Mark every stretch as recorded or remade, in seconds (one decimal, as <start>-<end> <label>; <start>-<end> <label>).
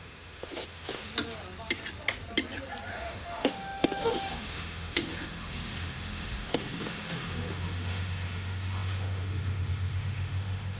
0.0-1.1 remade; 1.1-2.9 recorded; 2.9-10.8 remade